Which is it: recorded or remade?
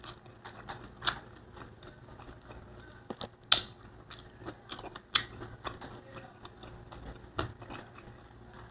recorded